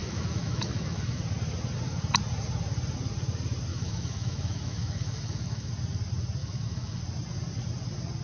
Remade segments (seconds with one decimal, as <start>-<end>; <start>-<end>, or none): 0.0-1.2; 3.7-5.7; 6.4-7.0